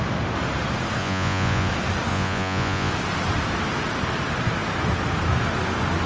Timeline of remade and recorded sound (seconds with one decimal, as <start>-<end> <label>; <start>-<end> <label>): 0.0-1.0 recorded; 1.0-1.7 remade; 1.7-2.1 recorded; 2.1-2.9 remade; 2.9-6.1 recorded